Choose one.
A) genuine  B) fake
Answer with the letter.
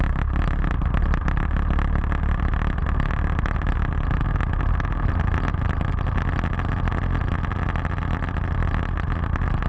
A